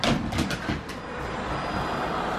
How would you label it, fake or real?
real